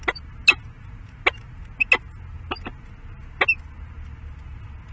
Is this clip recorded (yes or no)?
yes